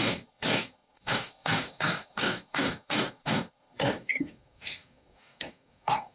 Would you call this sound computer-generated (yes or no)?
yes